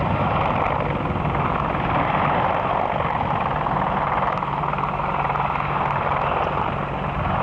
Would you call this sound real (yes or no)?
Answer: yes